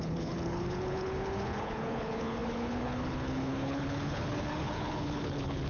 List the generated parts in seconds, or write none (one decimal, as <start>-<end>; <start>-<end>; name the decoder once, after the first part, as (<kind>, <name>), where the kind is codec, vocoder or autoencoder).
0.0-5.7 (codec, HILCodec)